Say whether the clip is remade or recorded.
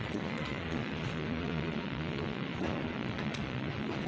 remade